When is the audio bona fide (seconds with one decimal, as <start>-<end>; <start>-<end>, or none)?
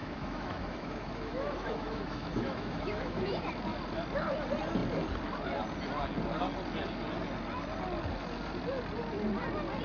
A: 3.5-9.8